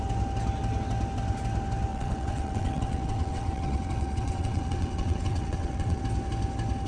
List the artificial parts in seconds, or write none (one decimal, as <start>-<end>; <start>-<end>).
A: 1.9-6.0